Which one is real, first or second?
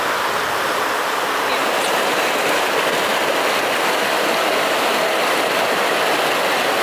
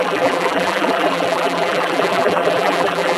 first